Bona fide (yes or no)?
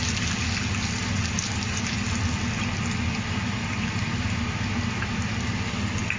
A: yes